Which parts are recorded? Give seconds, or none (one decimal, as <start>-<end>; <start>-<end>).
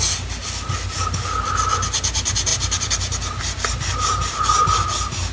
0.0-5.3